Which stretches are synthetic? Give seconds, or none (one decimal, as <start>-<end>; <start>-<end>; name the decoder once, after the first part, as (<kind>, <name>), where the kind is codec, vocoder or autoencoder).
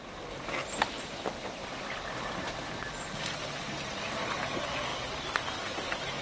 none